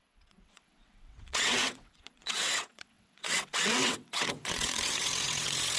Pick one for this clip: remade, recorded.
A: remade